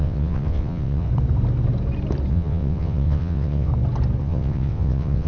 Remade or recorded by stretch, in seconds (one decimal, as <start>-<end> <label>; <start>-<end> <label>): 0.0-1.1 remade; 1.1-2.3 recorded; 2.3-3.7 remade; 3.7-4.2 recorded; 4.2-5.3 remade